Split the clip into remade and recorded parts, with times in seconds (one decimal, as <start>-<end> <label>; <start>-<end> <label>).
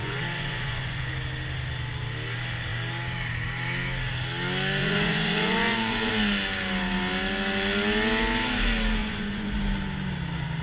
0.0-1.1 remade; 1.1-4.8 recorded; 4.8-6.1 remade; 6.1-9.0 recorded; 9.0-9.6 remade; 9.6-10.6 recorded